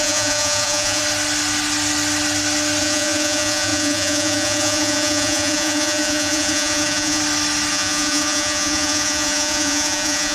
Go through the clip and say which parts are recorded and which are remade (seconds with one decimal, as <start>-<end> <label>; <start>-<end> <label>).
0.0-1.0 remade; 1.0-2.8 recorded; 2.8-7.2 remade; 7.2-7.7 recorded; 7.7-10.3 remade